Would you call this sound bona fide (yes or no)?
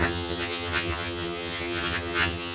no